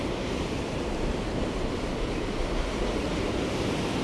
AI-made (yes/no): no